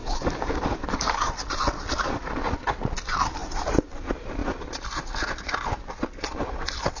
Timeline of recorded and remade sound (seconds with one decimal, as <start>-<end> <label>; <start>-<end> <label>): 0.0-1.3 remade; 1.3-7.0 recorded